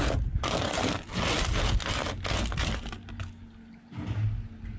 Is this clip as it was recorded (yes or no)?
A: yes